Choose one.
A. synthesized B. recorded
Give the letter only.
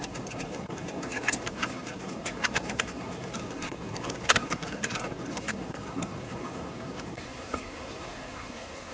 A